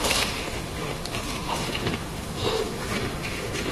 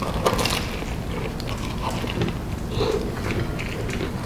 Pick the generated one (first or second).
first